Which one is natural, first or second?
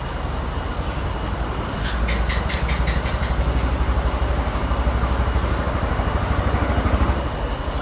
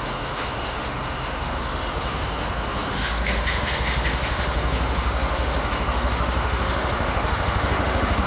first